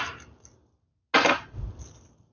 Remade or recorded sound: recorded